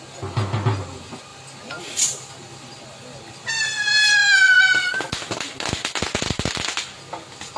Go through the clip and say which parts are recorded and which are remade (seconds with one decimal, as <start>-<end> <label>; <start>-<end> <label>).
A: 0.0-7.6 recorded